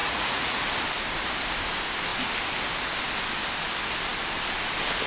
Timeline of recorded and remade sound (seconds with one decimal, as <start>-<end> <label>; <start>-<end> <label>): 0.0-0.6 remade; 0.6-5.1 recorded